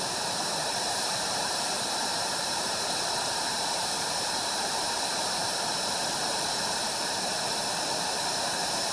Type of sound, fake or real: fake